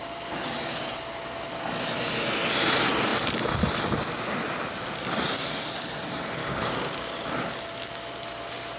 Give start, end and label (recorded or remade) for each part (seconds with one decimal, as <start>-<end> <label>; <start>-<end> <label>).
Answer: 0.0-6.4 recorded; 6.4-7.3 remade; 7.3-8.8 recorded